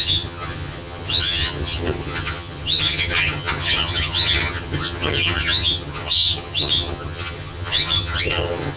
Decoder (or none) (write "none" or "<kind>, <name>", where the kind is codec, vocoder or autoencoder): vocoder, HiFi-GAN